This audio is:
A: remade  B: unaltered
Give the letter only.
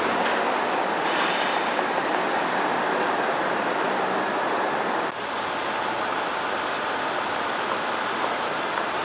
B